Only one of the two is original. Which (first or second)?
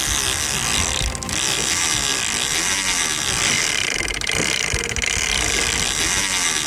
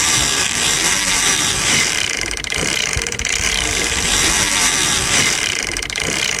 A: first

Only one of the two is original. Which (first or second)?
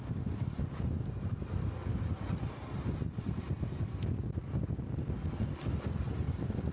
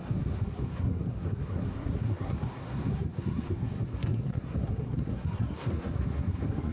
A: first